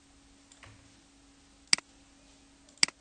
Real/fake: real